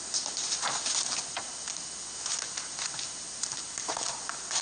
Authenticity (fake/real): real